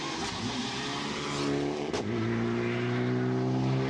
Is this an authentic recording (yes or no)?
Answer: yes